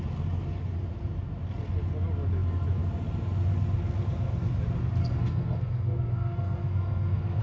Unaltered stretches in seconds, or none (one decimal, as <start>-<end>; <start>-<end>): 0.0-5.0